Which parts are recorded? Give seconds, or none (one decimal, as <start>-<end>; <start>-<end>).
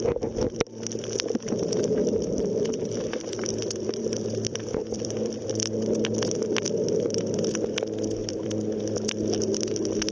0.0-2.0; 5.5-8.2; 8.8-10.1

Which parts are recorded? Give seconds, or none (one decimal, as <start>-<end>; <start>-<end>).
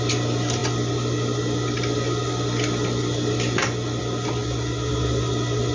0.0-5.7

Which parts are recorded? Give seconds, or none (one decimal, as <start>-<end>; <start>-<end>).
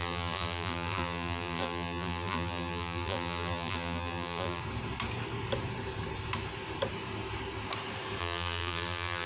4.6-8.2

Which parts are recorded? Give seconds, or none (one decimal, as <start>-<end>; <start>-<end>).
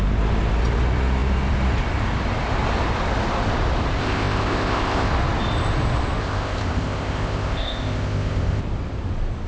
0.0-4.0; 5.1-6.2; 8.6-9.5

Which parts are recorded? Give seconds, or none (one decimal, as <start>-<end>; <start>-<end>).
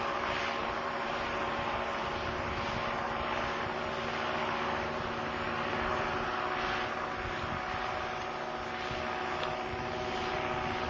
0.0-0.6; 2.7-10.9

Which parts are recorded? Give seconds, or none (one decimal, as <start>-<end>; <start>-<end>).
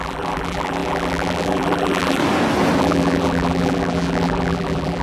2.2-2.8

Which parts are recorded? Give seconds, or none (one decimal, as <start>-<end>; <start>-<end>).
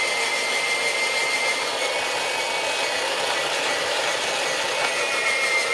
0.0-5.7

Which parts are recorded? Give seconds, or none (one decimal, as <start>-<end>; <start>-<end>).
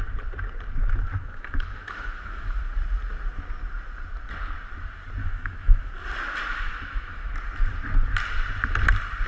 0.0-1.2; 2.6-5.2; 5.9-6.5; 7.3-9.3